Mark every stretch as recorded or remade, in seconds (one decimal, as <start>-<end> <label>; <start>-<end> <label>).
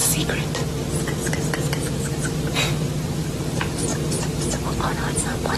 0.0-3.2 recorded; 3.2-5.6 remade